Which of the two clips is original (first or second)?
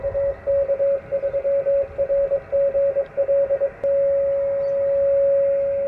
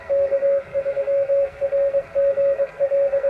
first